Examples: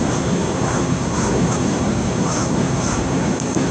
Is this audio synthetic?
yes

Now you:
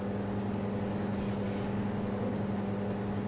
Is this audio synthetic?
no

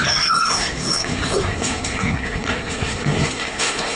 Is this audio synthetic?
yes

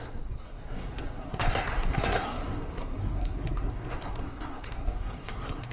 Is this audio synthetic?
yes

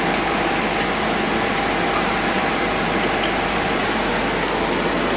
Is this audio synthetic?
no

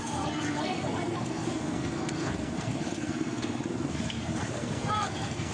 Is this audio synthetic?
yes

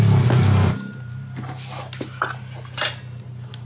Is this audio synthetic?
no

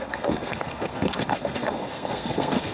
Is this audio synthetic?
yes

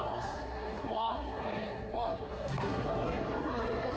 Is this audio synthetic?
yes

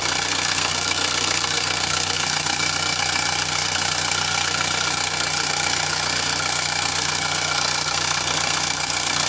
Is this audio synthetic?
yes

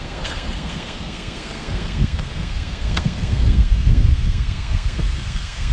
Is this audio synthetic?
yes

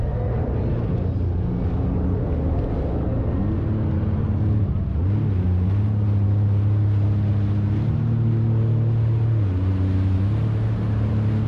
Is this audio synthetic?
no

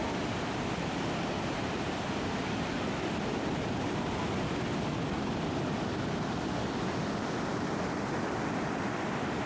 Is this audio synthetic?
no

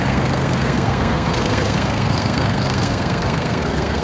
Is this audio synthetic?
yes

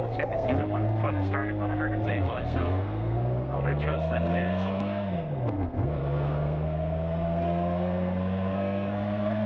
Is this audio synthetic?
yes